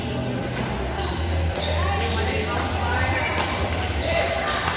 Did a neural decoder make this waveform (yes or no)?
no